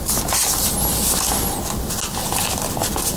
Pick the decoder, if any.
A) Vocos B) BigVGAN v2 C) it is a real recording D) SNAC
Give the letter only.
C